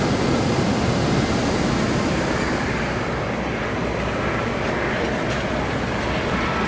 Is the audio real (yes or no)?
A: yes